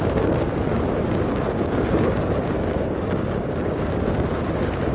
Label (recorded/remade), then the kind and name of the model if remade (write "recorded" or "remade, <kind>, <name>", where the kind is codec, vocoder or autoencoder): remade, codec, DAC